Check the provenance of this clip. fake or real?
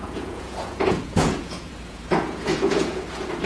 fake